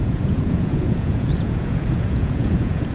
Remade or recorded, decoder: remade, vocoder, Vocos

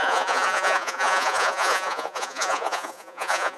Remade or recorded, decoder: remade, vocoder, Vocos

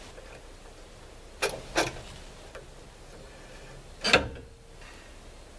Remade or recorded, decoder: recorded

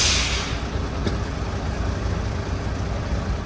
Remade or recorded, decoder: recorded